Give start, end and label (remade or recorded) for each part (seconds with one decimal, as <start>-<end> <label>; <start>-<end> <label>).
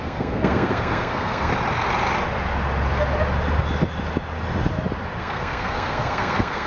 0.0-1.5 remade; 1.5-5.2 recorded; 5.2-6.7 remade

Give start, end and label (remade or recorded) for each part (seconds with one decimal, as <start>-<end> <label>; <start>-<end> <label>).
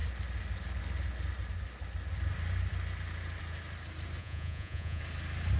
0.0-4.2 recorded; 4.2-5.0 remade; 5.0-5.6 recorded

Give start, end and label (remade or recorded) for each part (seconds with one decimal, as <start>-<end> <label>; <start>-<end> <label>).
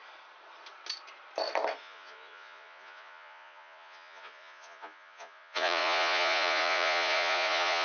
0.0-1.8 recorded; 1.8-7.8 remade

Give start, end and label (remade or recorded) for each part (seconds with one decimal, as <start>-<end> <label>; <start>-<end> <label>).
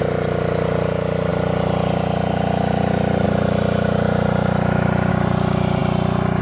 0.0-6.4 recorded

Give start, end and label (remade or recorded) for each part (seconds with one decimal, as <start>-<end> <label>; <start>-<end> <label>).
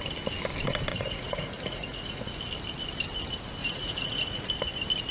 0.0-0.9 recorded; 0.9-2.3 remade; 2.3-3.6 recorded; 3.6-4.5 remade; 4.5-5.1 recorded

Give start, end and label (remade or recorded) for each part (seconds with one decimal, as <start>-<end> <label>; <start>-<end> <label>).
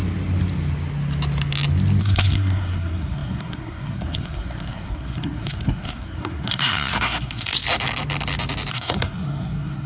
0.0-2.0 recorded; 2.0-7.5 remade; 7.5-8.7 recorded; 8.7-9.9 remade